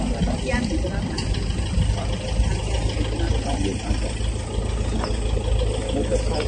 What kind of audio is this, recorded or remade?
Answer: recorded